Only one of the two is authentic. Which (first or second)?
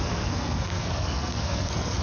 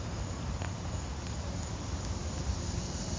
second